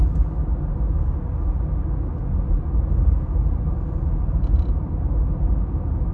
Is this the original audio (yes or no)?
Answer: yes